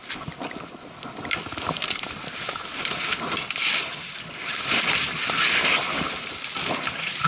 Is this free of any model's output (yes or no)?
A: yes